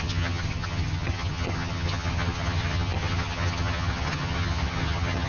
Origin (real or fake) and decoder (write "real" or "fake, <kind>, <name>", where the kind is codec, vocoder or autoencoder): fake, vocoder, HiFi-GAN